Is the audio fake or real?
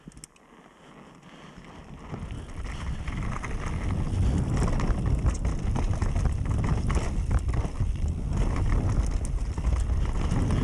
real